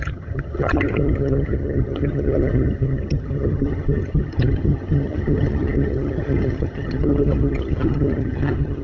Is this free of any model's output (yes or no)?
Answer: no